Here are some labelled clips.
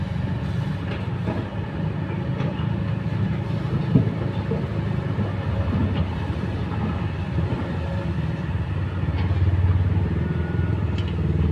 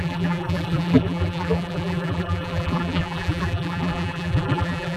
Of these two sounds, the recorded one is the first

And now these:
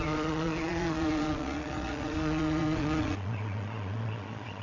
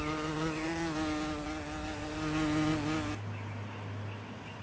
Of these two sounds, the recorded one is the second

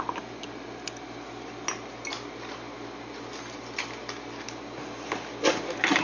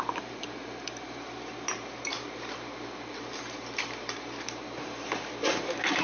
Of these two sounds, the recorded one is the first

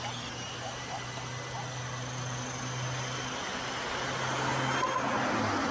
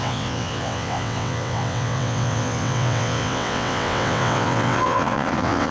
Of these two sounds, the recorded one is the first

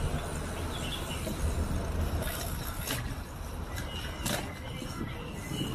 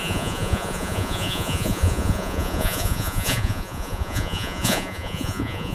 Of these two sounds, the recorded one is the first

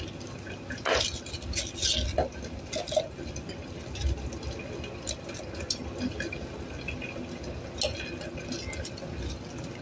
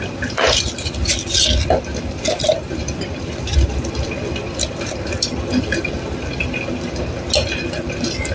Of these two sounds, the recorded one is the first